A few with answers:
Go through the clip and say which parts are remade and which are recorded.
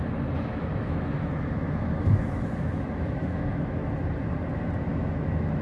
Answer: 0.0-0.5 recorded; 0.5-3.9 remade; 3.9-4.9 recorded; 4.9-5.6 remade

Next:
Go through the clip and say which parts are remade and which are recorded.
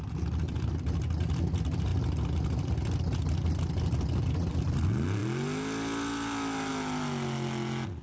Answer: 0.0-8.0 recorded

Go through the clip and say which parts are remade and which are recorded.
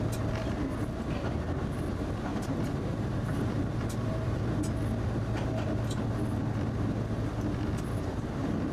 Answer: 0.0-2.3 recorded; 2.3-4.6 remade; 4.6-8.7 recorded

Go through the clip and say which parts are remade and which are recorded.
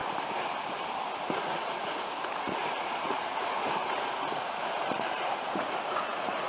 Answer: 0.0-1.4 recorded; 1.4-6.5 remade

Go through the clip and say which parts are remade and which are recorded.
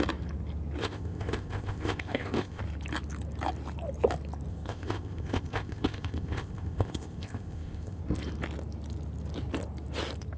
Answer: 0.0-0.8 recorded; 0.8-2.6 remade; 2.6-4.5 recorded; 4.5-8.0 remade; 8.0-10.4 recorded